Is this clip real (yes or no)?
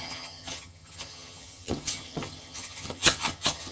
no